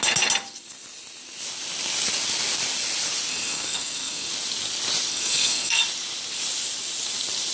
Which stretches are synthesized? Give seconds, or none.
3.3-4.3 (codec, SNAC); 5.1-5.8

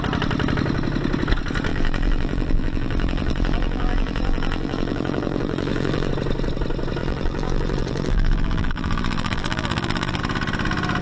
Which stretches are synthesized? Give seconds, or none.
1.7-6.1 (vocoder, BigVGAN v2); 7.0-10.2

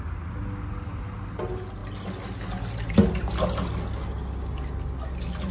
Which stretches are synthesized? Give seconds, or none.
none

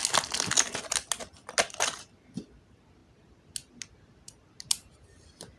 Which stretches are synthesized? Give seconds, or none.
none